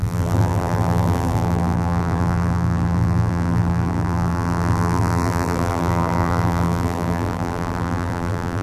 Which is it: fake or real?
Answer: fake